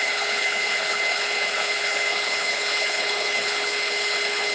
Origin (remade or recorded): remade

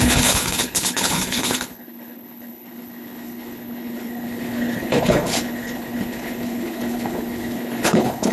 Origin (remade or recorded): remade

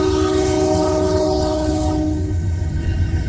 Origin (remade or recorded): remade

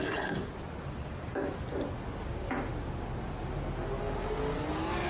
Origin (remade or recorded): recorded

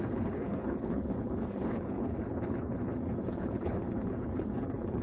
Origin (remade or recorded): remade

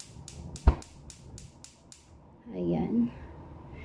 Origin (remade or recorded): recorded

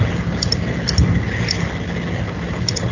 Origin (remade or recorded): recorded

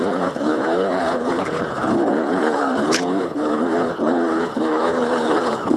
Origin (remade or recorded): remade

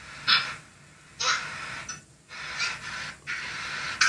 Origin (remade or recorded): recorded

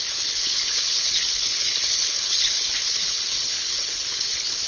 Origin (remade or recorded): remade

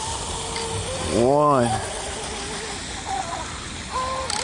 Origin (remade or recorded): recorded